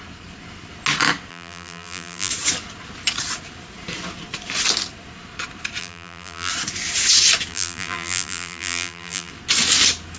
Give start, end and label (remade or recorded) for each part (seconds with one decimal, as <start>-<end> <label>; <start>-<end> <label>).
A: 0.0-1.3 recorded; 1.3-2.3 remade; 2.3-5.8 recorded; 5.8-6.5 remade; 6.5-7.5 recorded; 7.5-9.3 remade; 9.3-10.2 recorded